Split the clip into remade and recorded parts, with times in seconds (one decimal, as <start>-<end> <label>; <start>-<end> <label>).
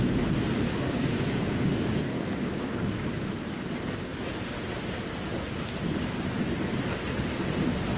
0.0-0.7 recorded; 0.7-3.3 remade; 3.3-8.0 recorded